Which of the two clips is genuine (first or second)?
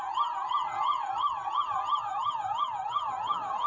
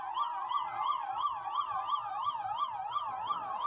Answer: second